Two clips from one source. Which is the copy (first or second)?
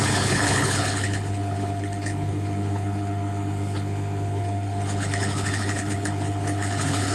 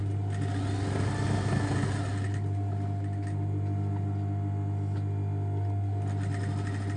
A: first